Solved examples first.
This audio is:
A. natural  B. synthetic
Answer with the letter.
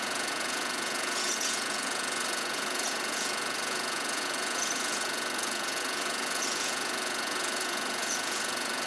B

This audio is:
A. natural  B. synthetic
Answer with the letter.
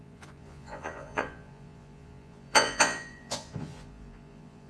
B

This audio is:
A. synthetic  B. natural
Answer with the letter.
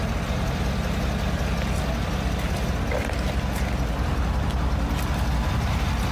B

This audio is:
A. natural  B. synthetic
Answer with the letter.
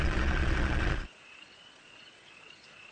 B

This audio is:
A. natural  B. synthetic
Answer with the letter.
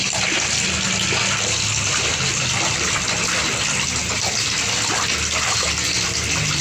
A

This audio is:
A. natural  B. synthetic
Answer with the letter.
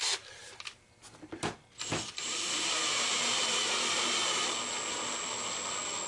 A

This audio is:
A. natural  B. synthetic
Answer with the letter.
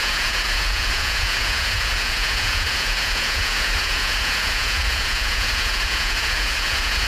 B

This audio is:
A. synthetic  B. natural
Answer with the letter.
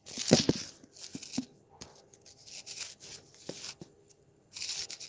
B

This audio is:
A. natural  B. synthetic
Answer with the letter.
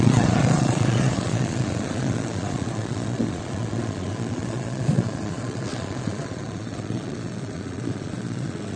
B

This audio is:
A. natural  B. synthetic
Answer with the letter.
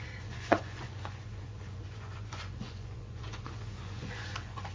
B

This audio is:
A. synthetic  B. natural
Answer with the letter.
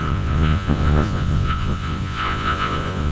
A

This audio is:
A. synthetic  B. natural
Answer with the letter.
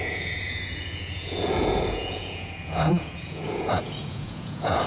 A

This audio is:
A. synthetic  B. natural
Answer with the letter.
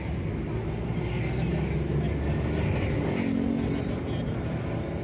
B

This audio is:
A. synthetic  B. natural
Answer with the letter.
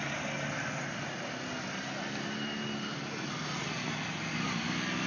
B